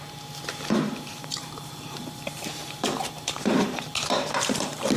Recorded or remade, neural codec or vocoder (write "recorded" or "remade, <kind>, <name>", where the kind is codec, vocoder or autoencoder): remade, vocoder, BigVGAN v2